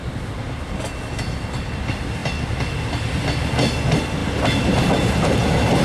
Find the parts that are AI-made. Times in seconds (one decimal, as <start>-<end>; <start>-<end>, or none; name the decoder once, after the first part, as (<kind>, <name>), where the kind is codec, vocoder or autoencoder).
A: none